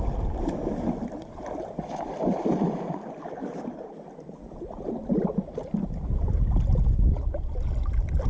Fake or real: real